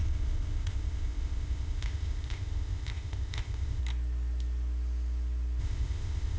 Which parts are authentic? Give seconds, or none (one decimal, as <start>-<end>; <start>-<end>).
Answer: 3.8-5.6